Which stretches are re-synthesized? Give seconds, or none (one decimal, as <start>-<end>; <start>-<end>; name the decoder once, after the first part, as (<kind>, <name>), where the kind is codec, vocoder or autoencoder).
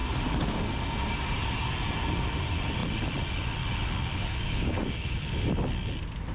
4.1-5.5 (codec, DAC)